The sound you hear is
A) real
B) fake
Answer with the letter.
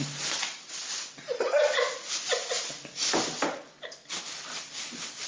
A